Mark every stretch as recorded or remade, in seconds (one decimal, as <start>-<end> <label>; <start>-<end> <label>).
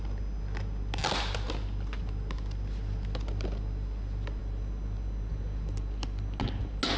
0.0-7.0 recorded